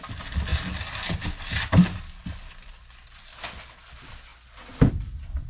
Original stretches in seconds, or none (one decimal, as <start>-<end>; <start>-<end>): 0.0-5.5